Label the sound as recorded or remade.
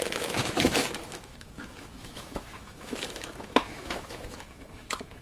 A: remade